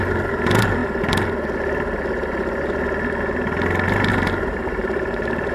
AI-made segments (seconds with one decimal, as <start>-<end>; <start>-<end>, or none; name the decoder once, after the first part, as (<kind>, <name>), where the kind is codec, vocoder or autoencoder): 0.0-0.8 (vocoder, BigVGAN v2); 4.1-5.5